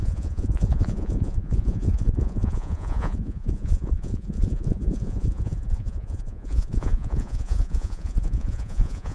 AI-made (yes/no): yes